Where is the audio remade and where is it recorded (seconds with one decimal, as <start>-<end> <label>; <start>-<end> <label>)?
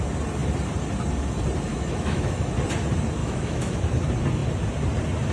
0.0-1.7 recorded; 1.7-2.5 remade; 2.5-3.2 recorded; 3.2-3.7 remade; 3.7-5.3 recorded